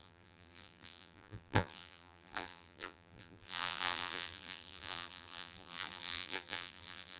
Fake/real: fake